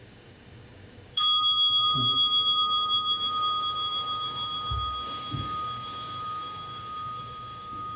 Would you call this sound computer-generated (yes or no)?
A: yes